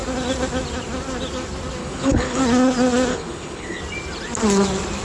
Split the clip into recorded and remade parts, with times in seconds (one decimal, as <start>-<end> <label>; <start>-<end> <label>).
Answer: 0.0-1.8 recorded; 1.8-2.4 remade; 2.4-3.1 recorded; 3.1-3.8 remade; 3.8-5.0 recorded